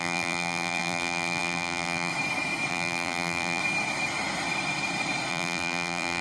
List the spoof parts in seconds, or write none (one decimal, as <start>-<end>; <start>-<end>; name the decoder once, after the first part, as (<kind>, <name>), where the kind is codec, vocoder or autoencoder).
0.0-2.1 (vocoder, BigVGAN v2); 2.7-3.6; 5.3-6.2